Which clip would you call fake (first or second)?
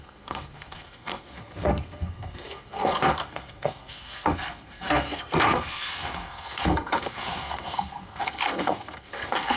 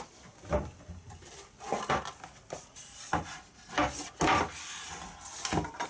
first